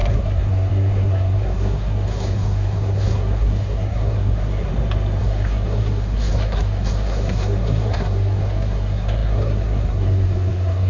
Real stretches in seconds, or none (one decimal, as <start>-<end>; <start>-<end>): 4.7-5.2